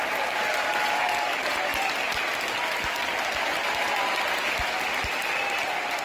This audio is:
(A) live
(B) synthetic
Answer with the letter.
A